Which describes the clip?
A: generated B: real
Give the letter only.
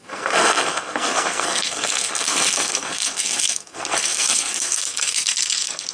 A